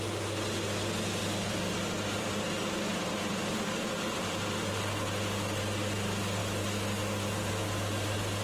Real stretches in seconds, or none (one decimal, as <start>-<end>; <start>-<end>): 0.0-1.2; 4.7-8.4